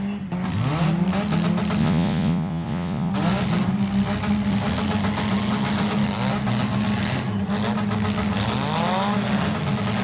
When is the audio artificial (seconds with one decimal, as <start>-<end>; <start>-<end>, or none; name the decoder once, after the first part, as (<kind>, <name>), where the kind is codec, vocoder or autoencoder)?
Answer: 1.8-3.1 (vocoder, Vocos)